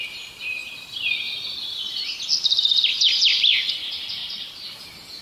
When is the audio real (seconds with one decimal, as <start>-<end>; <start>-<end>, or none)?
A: 0.0-4.2; 4.8-5.2